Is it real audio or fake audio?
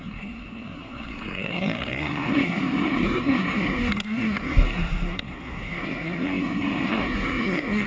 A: fake